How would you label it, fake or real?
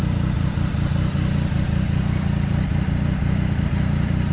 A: real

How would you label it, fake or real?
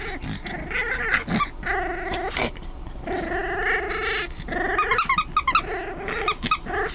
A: real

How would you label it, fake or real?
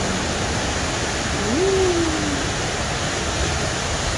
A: real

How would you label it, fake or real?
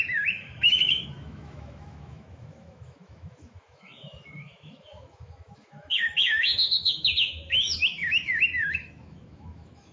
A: fake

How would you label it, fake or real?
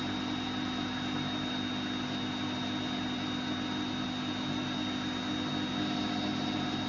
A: real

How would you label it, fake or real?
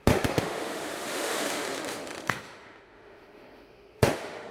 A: fake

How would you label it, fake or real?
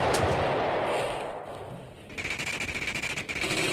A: real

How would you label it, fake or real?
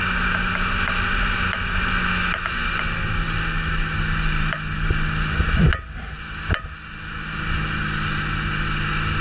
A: real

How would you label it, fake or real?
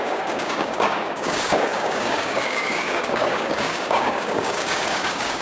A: fake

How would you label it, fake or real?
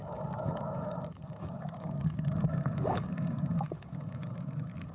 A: fake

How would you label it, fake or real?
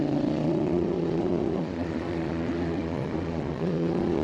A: fake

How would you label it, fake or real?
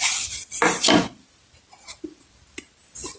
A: real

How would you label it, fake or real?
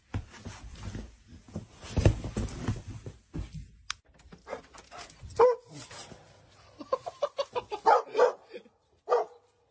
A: real